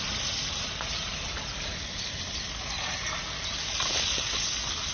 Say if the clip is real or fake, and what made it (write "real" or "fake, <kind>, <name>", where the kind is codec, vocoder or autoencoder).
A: real